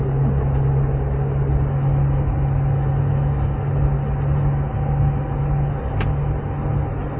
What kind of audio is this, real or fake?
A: real